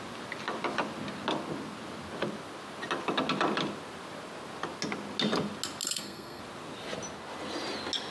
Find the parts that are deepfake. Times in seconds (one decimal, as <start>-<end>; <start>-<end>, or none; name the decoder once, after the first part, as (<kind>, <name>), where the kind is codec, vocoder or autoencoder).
5.8-6.4 (codec, SNAC)

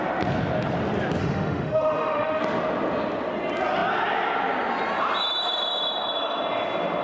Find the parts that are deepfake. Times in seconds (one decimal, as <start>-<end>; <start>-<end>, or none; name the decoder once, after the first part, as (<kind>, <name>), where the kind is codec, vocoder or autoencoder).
1.2-2.4 (autoencoder, DAC-VAE)

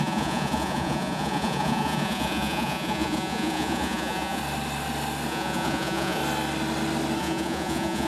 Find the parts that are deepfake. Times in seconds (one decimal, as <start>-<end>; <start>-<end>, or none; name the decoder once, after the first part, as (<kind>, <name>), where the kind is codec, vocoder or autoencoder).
0.0-4.4 (vocoder, Vocos); 5.3-6.2; 7.2-8.1

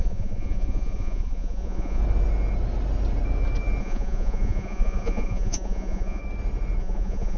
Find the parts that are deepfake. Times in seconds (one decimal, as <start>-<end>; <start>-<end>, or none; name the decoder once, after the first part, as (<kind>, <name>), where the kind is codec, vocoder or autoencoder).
0.0-2.0 (vocoder, Vocos); 3.8-6.2; 6.8-7.4